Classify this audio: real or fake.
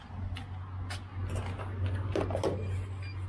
real